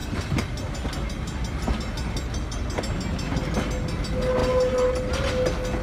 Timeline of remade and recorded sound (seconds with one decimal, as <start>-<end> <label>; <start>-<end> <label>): 0.0-5.8 recorded